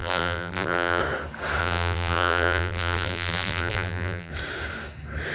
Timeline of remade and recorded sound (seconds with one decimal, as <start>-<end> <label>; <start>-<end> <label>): 0.0-1.0 remade; 1.0-1.6 recorded; 1.6-4.3 remade; 4.3-5.3 recorded